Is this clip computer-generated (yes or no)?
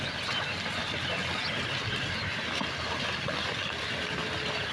no